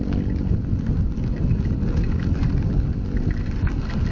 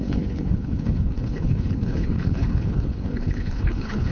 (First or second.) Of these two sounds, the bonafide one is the first